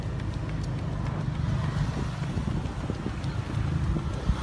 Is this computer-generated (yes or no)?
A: no